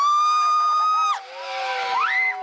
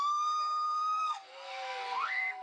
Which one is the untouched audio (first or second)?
first